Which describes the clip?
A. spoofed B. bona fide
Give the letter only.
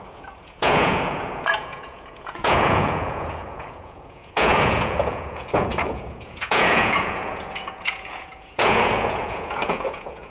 A